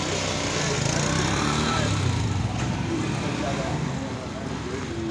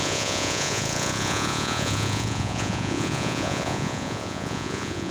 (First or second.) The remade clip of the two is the second